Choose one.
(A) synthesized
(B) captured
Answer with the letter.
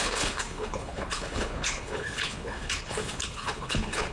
A